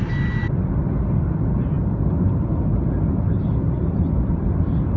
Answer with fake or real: real